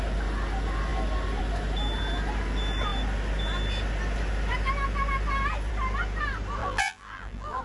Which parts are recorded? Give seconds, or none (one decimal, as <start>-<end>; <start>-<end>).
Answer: 0.0-6.6